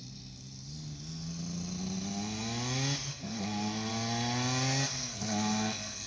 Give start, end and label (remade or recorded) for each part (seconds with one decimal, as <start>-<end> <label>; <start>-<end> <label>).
0.0-3.1 recorded; 3.1-3.9 remade; 3.9-4.9 recorded; 4.9-6.1 remade